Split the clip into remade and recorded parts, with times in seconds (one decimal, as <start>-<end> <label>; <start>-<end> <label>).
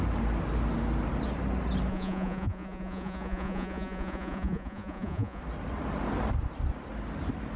0.0-1.9 recorded; 1.9-5.4 remade; 5.4-7.6 recorded